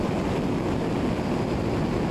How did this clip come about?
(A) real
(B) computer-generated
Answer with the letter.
A